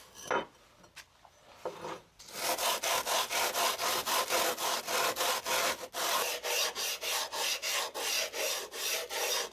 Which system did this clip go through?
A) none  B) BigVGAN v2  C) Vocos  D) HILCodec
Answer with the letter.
A